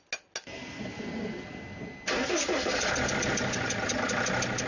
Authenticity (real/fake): real